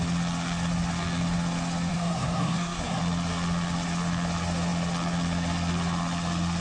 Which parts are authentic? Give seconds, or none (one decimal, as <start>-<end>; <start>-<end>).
0.0-1.9; 3.0-6.6

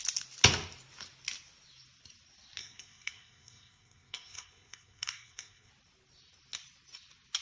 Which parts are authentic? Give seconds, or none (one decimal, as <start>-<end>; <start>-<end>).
0.0-2.6; 5.7-7.4

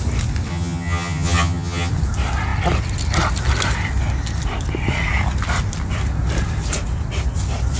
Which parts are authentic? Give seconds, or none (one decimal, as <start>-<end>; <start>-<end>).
0.0-0.5; 1.9-7.8